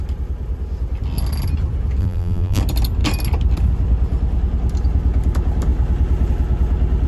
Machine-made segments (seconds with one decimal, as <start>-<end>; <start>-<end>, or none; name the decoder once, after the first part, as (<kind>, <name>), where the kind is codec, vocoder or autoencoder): 2.0-2.6 (vocoder, BigVGAN v2)